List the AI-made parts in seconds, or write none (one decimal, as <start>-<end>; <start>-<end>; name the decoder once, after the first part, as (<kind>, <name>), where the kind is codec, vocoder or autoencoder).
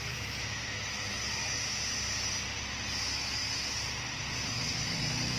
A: 0.0-1.1 (autoencoder, DAC-VAE); 3.0-3.4; 4.5-5.4